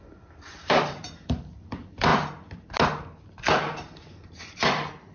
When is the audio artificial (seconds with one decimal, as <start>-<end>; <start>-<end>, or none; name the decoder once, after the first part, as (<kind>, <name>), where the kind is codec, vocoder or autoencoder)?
0.0-2.1 (vocoder, BigVGAN v2); 4.4-5.1